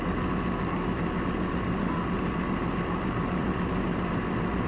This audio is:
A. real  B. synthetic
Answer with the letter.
A